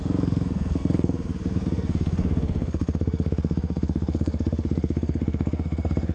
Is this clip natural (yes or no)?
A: no